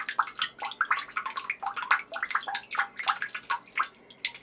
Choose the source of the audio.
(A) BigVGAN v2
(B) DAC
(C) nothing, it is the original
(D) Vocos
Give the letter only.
C